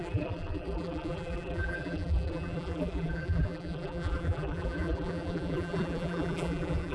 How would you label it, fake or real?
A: fake